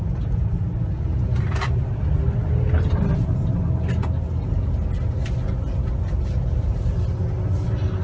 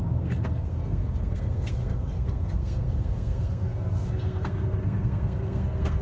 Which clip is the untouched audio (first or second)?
first